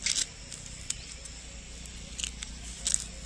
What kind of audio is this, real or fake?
real